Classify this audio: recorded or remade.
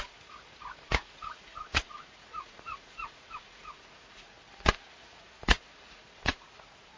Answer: remade